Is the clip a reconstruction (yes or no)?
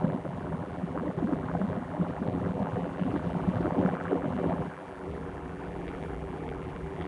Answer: yes